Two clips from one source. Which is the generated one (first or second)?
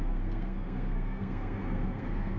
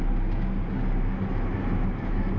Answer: first